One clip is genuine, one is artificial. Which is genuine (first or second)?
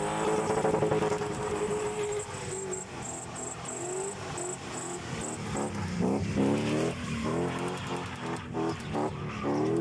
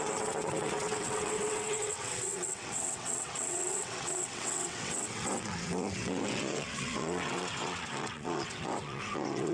first